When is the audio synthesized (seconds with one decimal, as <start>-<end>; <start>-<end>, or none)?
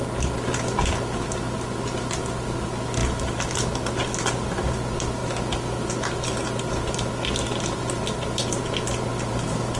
none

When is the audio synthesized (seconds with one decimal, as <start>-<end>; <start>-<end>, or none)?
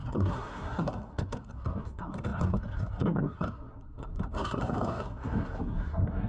0.0-6.3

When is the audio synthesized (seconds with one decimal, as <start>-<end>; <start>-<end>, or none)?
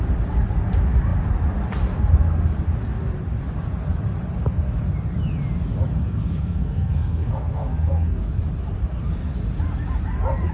6.0-8.3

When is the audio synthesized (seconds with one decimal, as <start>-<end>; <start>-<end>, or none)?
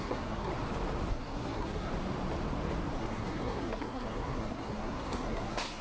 0.0-0.5; 1.1-1.9; 3.0-5.8